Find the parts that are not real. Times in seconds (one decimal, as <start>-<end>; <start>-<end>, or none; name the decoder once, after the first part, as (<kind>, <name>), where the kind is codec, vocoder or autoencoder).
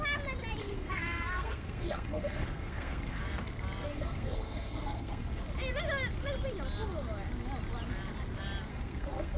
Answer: 0.6-3.2 (codec, SNAC); 3.9-5.4; 8.7-9.4